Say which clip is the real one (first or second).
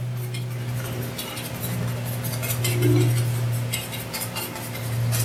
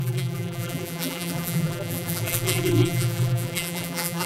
first